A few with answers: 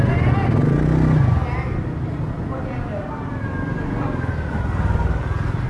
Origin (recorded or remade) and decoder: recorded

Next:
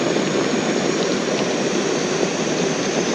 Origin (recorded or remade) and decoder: recorded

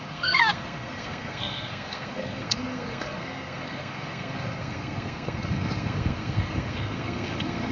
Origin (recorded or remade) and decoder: remade, codec, SNAC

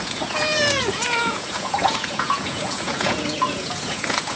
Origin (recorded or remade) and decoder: remade, vocoder, Vocos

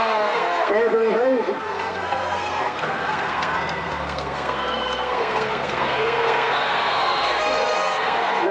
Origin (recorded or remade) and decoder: remade, codec, SNAC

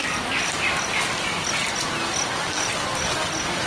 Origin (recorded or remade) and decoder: recorded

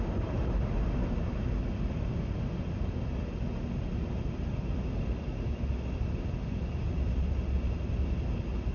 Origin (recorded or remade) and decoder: recorded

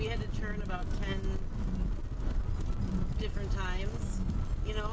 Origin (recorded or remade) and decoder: recorded